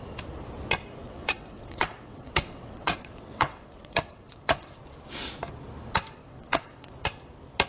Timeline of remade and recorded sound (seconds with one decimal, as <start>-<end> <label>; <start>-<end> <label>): 0.0-1.0 recorded; 1.0-4.8 remade; 4.8-6.2 recorded; 6.2-6.9 remade; 6.9-7.7 recorded